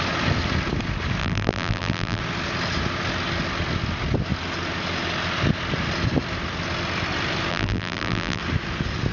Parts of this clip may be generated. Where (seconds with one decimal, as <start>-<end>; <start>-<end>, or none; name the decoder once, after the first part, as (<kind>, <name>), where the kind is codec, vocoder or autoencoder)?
1.2-2.2 (vocoder, BigVGAN v2); 7.5-8.4

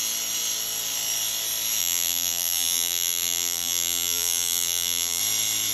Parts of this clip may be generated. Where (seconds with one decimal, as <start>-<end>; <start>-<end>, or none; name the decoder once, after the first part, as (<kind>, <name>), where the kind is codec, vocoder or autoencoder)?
1.8-5.2 (vocoder, BigVGAN v2)

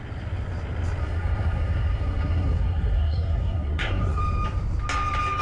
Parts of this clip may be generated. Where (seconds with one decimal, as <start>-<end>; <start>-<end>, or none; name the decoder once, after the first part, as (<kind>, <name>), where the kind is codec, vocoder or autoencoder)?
1.0-4.2 (codec, SNAC)

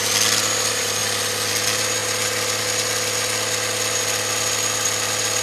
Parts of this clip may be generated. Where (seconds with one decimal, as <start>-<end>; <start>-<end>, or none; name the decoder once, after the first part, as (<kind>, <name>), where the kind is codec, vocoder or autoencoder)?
none

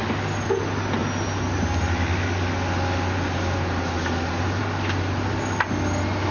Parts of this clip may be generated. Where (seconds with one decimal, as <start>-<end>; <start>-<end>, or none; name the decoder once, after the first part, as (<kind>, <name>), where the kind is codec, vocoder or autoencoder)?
none

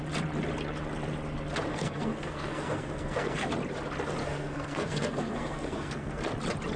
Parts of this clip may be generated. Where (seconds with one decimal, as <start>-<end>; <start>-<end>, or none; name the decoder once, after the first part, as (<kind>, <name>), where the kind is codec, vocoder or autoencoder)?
1.7-3.5 (codec, SNAC); 4.2-6.2

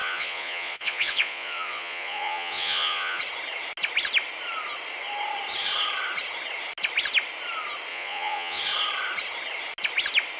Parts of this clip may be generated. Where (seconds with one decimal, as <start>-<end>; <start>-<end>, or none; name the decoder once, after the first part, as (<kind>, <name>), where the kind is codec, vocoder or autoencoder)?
0.0-3.2 (vocoder, Vocos); 7.9-8.6

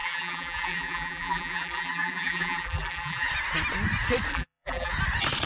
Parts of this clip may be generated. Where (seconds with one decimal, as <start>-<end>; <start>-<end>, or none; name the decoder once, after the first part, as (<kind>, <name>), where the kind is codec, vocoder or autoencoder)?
0.0-3.3 (vocoder, BigVGAN v2); 4.3-4.9